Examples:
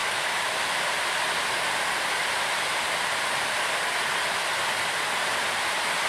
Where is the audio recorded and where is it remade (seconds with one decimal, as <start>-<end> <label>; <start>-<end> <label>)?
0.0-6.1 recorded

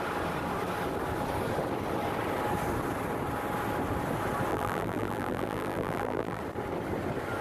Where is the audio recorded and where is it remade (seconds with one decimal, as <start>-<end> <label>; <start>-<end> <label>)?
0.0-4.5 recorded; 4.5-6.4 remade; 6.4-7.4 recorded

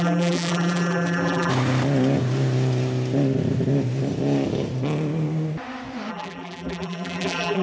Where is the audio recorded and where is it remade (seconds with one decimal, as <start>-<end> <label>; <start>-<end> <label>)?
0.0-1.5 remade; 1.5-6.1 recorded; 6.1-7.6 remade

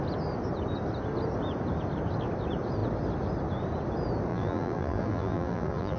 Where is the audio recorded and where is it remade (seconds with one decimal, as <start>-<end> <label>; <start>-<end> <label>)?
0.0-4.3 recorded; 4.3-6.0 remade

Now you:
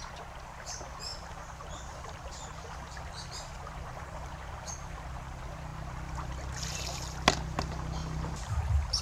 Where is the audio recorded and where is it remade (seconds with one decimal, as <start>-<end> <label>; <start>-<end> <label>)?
0.0-1.1 recorded; 1.1-4.7 remade; 4.7-9.0 recorded

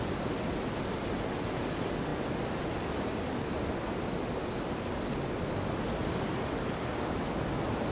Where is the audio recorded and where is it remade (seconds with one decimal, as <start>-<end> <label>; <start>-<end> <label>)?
0.0-6.0 recorded; 6.0-6.8 remade; 6.8-7.9 recorded

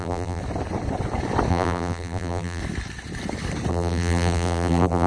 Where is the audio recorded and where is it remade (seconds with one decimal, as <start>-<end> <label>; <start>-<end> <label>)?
0.0-0.4 remade; 0.4-1.5 recorded; 1.5-2.6 remade; 2.6-3.7 recorded; 3.7-5.1 remade

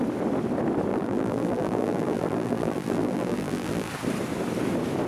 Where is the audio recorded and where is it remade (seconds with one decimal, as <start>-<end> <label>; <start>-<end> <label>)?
0.0-0.9 recorded; 0.9-3.9 remade; 3.9-5.1 recorded